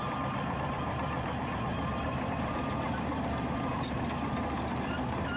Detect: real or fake fake